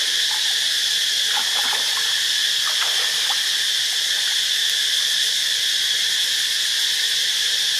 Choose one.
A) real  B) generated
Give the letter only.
A